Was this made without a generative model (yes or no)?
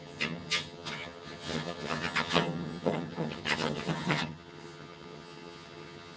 no